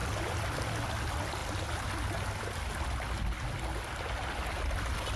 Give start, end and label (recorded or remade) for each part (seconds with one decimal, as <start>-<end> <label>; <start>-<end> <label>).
0.0-5.2 recorded